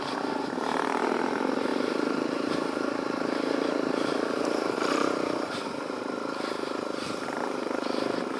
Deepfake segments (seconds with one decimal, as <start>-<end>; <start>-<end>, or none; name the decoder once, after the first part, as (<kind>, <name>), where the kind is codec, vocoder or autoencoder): 1.7-5.6 (vocoder, BigVGAN v2)